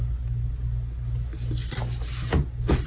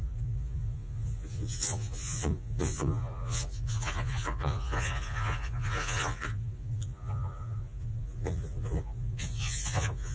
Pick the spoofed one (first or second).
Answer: second